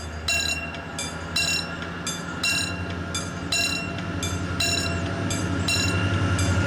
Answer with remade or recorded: recorded